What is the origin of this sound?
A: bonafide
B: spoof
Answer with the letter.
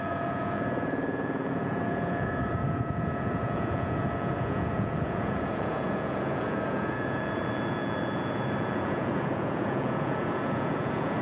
B